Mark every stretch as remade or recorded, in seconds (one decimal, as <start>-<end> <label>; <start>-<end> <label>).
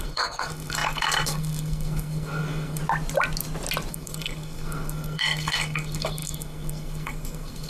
0.0-2.8 remade; 2.8-3.9 recorded; 3.9-7.7 remade